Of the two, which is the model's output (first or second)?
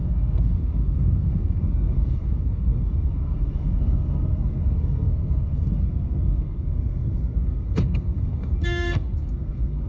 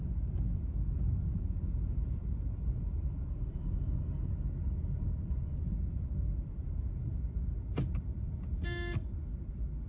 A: first